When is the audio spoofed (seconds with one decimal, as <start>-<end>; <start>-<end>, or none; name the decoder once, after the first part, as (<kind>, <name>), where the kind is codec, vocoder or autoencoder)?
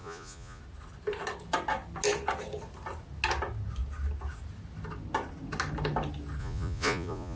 0.0-0.6 (vocoder, Vocos); 6.4-7.4